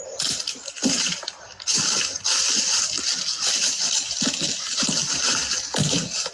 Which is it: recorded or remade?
recorded